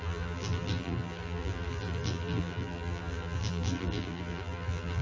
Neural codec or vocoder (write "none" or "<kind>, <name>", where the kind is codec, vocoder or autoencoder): vocoder, BigVGAN v2